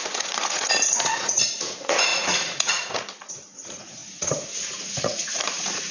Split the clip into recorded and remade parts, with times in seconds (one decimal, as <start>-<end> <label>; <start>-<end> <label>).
0.0-5.9 remade